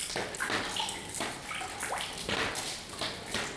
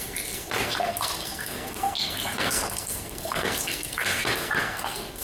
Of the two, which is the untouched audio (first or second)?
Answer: first